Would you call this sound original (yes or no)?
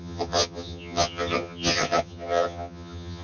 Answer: no